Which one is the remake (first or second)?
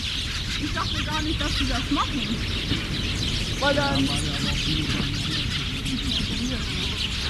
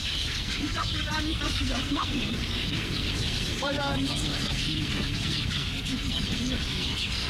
second